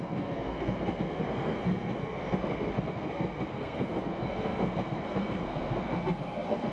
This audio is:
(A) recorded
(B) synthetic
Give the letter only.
B